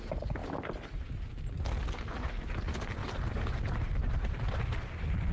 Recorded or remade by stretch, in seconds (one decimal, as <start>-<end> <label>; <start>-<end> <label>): 0.0-3.0 recorded; 3.0-4.4 remade; 4.4-5.3 recorded